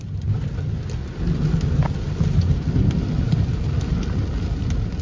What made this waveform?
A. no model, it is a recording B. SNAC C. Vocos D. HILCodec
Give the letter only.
A